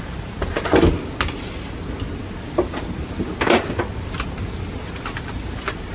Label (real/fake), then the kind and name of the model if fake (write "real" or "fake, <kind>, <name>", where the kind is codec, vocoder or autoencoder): real